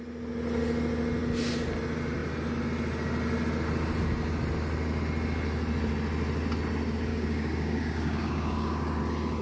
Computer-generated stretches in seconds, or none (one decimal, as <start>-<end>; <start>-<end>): 7.1-9.0